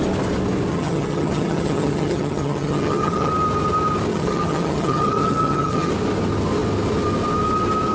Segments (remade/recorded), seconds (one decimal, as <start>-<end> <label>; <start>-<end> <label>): 0.0-0.7 recorded; 0.7-3.3 remade; 3.3-4.1 recorded; 4.1-5.9 remade; 5.9-7.9 recorded